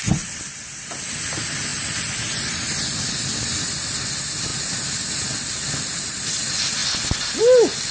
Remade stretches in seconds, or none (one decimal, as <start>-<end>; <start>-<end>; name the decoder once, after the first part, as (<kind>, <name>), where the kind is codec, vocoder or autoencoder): none